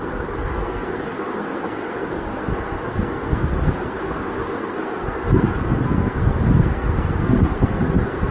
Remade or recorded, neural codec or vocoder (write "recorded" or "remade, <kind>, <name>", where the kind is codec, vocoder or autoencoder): remade, codec, SNAC